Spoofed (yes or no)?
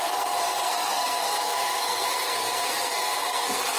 yes